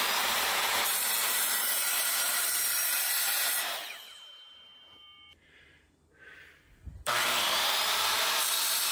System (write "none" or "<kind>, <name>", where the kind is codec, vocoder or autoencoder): vocoder, BigVGAN v2